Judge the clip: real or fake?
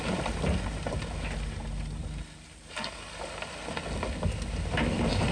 real